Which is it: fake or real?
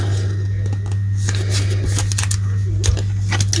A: real